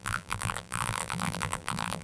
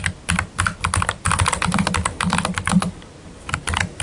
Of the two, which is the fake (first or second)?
first